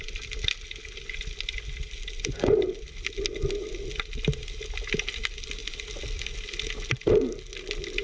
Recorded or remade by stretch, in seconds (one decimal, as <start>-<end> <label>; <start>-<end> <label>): 0.0-8.0 recorded